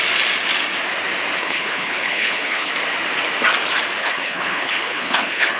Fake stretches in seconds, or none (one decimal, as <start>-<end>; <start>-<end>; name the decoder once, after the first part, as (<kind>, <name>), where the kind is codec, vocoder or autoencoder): 1.4-2.7 (codec, HILCodec); 4.0-5.6